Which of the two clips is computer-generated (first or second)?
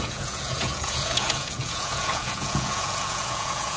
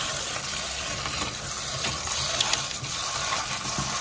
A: first